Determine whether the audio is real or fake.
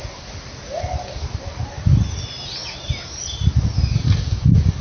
real